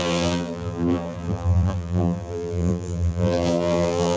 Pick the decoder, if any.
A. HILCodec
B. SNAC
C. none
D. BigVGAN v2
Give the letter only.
D